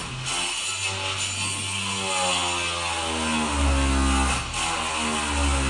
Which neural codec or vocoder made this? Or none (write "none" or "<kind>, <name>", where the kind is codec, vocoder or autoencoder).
none